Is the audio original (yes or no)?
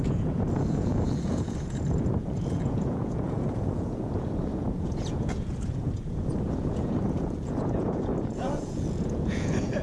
no